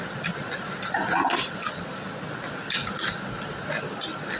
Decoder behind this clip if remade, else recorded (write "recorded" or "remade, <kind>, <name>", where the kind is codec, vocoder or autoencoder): recorded